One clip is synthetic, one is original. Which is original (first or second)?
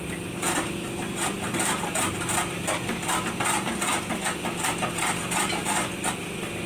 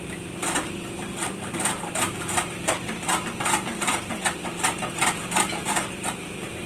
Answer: first